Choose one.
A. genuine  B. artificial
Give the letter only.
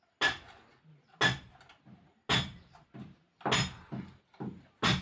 A